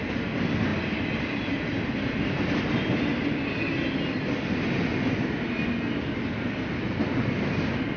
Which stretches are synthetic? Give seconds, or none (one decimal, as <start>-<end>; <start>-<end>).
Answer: none